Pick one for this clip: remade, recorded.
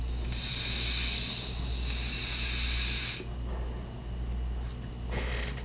recorded